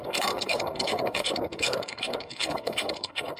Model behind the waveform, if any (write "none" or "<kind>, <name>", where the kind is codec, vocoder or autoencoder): codec, SNAC